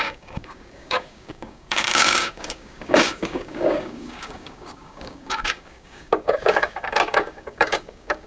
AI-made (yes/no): yes